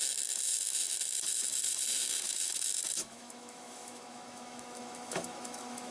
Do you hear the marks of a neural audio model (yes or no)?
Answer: yes